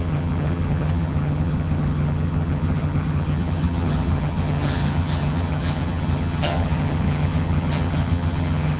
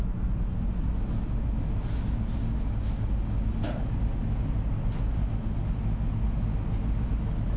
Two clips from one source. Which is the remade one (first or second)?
first